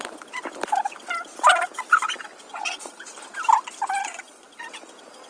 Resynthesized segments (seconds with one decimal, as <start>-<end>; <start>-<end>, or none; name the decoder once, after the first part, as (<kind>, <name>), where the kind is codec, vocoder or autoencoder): 2.5-3.0 (vocoder, Vocos); 4.0-4.6